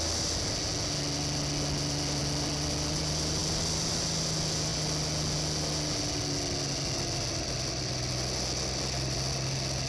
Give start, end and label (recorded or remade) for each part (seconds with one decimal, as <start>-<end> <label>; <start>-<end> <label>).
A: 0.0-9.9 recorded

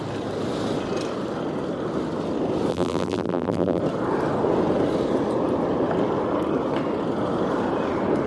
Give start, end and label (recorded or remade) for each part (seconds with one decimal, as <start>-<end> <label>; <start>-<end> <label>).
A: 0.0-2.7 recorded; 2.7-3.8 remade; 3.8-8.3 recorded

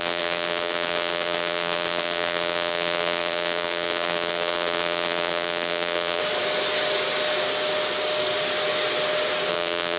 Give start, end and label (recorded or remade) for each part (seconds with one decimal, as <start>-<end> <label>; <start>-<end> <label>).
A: 0.0-6.2 remade; 6.2-9.5 recorded; 9.5-10.0 remade